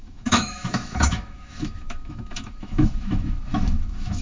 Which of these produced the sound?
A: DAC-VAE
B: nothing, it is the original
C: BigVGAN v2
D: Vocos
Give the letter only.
A